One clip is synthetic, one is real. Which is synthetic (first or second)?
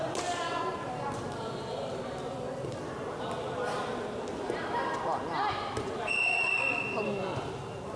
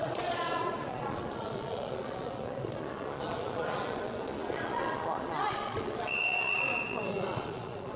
second